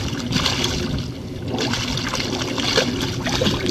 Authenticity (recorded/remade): recorded